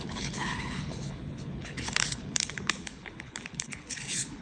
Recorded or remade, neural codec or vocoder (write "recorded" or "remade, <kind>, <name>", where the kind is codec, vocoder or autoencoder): remade, codec, HILCodec